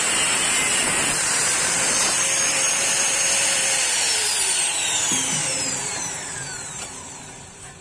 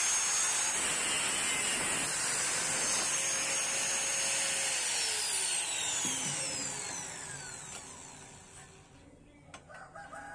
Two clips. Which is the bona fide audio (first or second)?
second